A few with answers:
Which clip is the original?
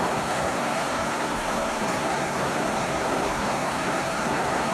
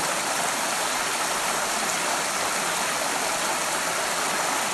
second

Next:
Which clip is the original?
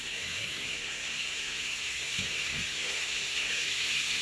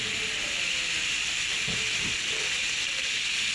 second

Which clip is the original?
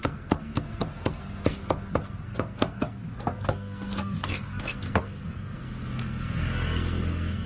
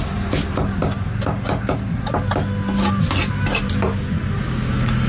second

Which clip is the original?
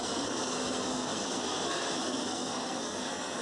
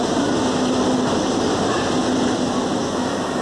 second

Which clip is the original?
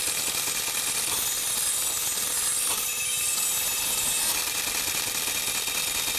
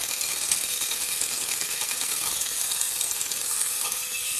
first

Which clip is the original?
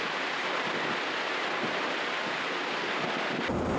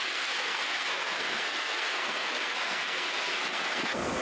first